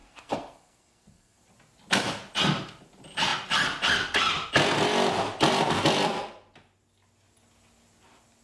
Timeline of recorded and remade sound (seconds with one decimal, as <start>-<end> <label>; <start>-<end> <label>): 0.0-1.4 remade; 1.4-8.4 recorded